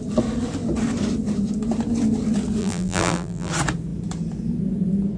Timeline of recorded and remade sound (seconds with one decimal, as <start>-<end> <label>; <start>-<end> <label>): 0.0-2.6 recorded; 2.6-3.5 remade; 3.5-5.2 recorded